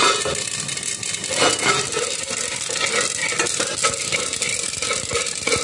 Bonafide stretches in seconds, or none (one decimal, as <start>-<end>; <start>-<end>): 0.0-5.6